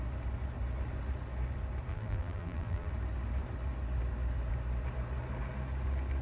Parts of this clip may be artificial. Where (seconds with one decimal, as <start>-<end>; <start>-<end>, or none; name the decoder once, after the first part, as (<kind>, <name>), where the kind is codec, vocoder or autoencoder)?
1.9-2.9 (vocoder, BigVGAN v2)